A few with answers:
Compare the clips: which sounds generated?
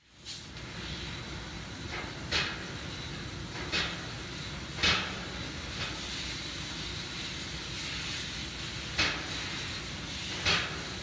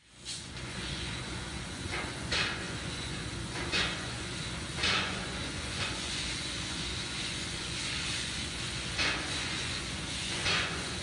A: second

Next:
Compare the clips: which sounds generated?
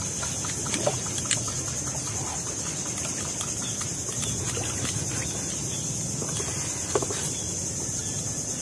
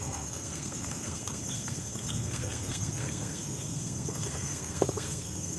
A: second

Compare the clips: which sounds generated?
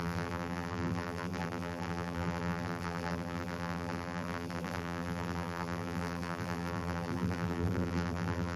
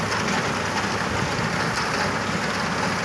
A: first